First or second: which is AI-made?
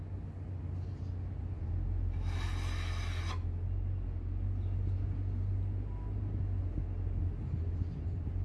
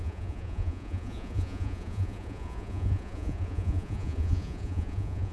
second